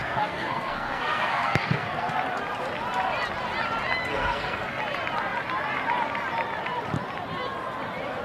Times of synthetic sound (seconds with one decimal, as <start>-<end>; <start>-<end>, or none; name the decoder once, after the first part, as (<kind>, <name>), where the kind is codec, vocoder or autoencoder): 0.0-2.1 (codec, SNAC); 4.1-4.8